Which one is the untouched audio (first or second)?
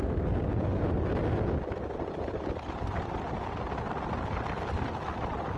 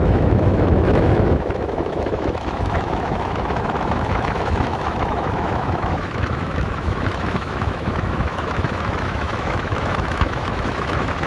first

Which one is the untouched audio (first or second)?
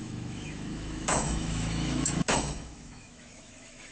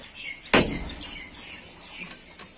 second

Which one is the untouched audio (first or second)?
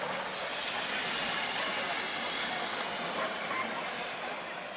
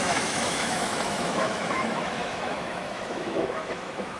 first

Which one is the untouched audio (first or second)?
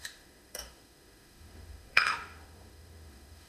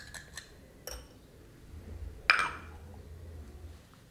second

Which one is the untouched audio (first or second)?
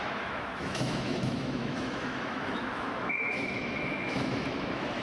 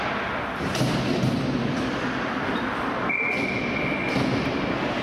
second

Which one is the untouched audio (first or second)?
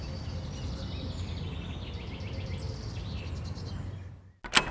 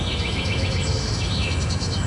first